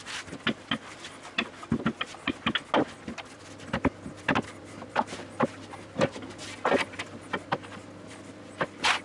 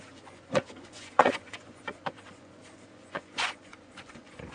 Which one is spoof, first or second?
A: second